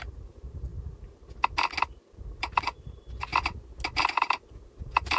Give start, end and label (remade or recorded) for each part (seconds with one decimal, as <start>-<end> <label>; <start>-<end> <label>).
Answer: 0.0-0.7 remade; 0.7-2.4 recorded; 2.4-3.3 remade; 3.3-4.0 recorded; 4.0-5.2 remade